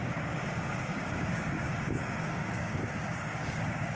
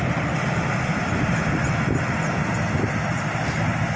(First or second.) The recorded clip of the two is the second